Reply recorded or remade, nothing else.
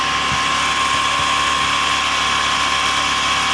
recorded